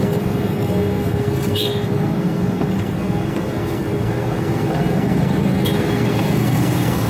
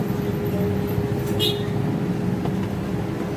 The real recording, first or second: second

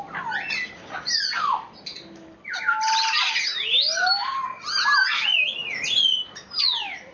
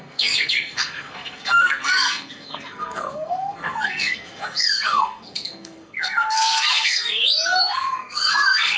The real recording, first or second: first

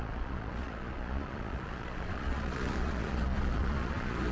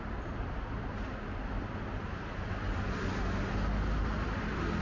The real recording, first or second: second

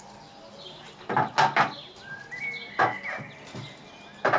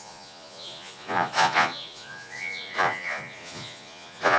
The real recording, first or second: first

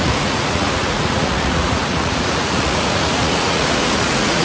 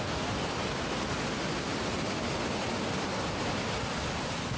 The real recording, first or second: second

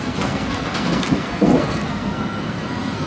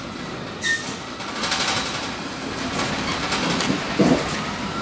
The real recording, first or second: second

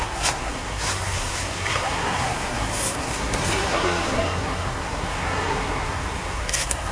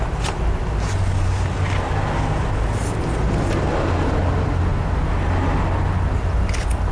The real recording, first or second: second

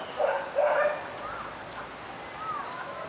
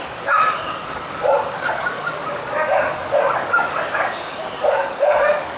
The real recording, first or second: first